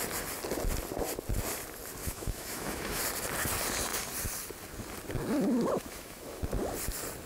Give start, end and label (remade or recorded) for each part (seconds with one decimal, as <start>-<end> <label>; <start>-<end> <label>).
0.0-2.0 recorded; 2.0-3.0 remade; 3.0-5.8 recorded; 5.8-6.4 remade; 6.4-7.3 recorded

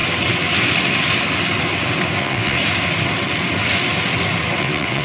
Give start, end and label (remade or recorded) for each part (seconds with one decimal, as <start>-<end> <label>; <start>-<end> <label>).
0.0-2.2 recorded; 2.2-2.6 remade; 2.6-4.6 recorded; 4.6-5.0 remade

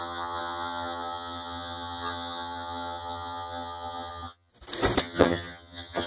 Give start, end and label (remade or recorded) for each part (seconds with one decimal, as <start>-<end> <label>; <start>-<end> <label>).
0.0-4.5 remade; 4.5-5.0 recorded; 5.0-6.1 remade

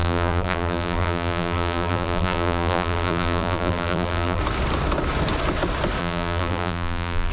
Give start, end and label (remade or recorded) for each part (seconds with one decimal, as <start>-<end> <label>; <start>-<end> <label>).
0.0-4.4 remade; 4.4-6.0 recorded; 6.0-7.3 remade

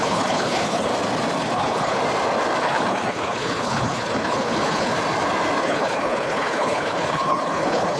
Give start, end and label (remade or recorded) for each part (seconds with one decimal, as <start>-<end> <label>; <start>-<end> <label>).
0.0-0.9 remade; 0.9-1.4 recorded; 1.4-2.0 remade; 2.0-2.6 recorded; 2.6-4.9 remade; 4.9-5.6 recorded; 5.6-8.0 remade

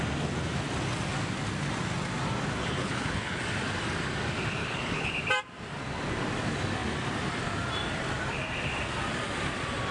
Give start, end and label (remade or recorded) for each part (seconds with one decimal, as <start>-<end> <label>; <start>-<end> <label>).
0.0-2.6 recorded; 2.6-3.4 remade; 3.4-4.6 recorded; 4.6-5.1 remade; 5.1-9.9 recorded

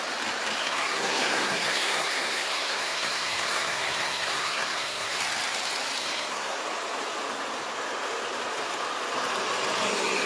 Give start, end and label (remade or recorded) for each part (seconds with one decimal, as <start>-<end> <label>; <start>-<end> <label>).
0.0-0.6 recorded; 0.6-5.2 remade; 5.2-6.0 recorded; 6.0-6.6 remade; 6.6-10.3 recorded